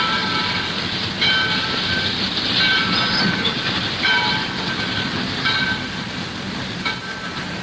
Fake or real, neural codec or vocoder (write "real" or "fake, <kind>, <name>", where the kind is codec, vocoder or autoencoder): real